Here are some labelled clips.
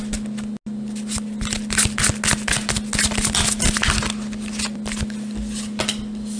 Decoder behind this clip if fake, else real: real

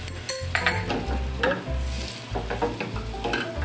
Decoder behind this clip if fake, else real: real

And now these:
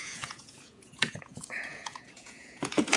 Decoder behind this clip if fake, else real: fake, vocoder, Vocos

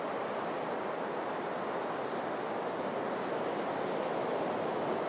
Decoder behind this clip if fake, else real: real